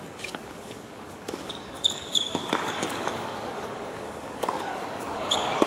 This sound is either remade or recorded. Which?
remade